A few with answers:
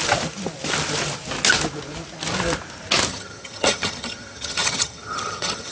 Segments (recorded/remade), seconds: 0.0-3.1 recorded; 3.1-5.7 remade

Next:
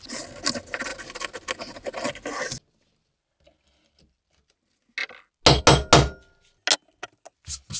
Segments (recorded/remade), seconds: 0.0-7.8 recorded